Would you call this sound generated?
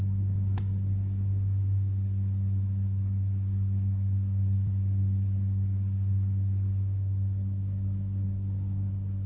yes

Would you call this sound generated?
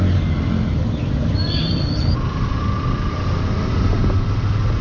no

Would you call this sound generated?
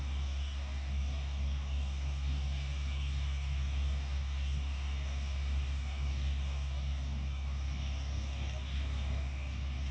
yes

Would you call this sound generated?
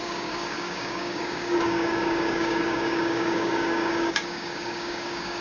yes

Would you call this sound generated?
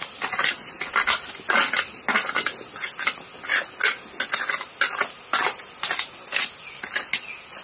no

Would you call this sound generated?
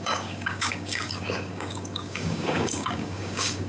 yes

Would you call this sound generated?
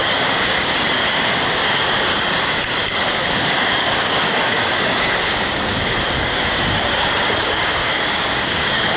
yes